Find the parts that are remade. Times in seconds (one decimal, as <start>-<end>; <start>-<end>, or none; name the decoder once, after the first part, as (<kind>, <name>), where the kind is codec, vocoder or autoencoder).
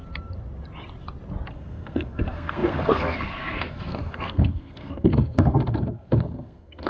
1.5-6.9 (codec, SNAC)